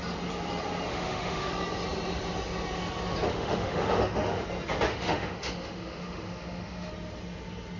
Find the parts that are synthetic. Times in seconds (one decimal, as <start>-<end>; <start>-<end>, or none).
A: 0.9-1.5; 3.3-4.4; 4.9-6.9